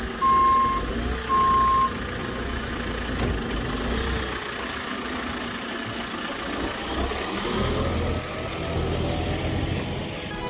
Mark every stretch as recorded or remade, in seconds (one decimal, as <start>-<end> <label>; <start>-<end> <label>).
0.0-2.2 recorded; 2.2-2.7 remade; 2.7-10.5 recorded